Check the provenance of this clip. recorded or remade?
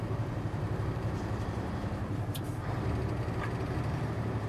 remade